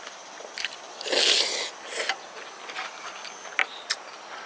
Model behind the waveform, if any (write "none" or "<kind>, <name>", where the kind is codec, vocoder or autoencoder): none